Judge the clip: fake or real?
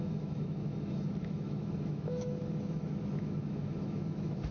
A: fake